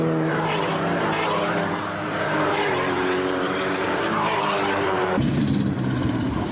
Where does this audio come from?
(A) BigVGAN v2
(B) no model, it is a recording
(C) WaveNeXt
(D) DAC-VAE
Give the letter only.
A